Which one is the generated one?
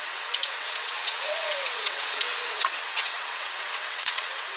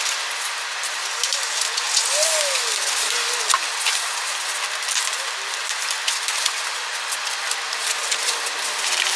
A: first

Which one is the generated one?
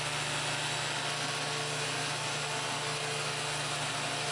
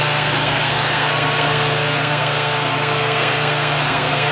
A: second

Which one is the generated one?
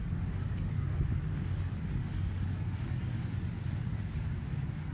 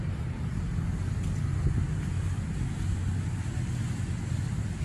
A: first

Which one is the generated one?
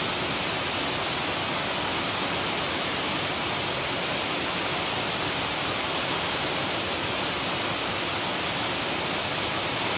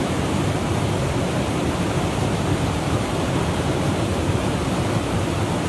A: second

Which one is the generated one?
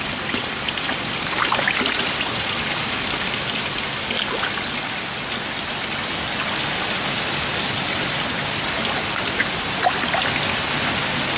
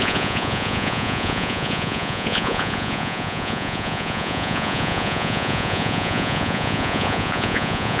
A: second